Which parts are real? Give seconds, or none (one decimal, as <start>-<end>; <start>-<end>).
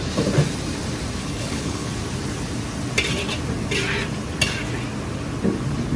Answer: 0.0-1.2; 1.9-6.0